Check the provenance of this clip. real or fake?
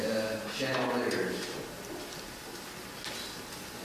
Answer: real